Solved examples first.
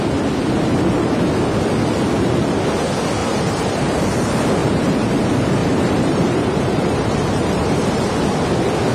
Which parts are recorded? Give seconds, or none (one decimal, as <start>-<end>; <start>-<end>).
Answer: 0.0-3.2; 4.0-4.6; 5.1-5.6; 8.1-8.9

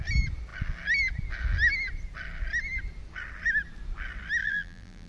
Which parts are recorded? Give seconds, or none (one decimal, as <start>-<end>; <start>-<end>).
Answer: 0.0-4.4

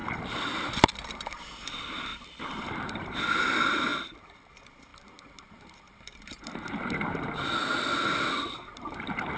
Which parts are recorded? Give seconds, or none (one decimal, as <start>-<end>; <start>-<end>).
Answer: 0.0-0.8; 4.9-8.7

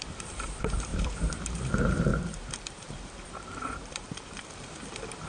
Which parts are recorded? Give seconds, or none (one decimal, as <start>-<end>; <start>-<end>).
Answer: none

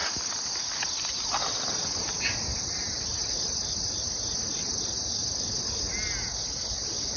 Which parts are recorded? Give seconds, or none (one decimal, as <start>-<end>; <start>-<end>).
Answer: 0.0-2.5; 4.8-7.2